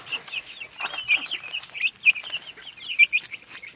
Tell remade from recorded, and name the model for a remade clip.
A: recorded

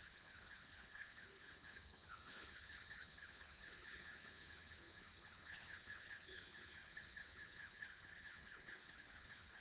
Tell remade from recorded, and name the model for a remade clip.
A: remade, codec, HILCodec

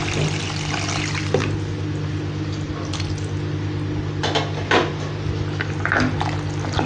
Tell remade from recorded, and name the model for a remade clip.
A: recorded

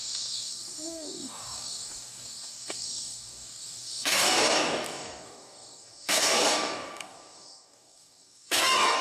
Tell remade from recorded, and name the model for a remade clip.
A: remade, codec, DAC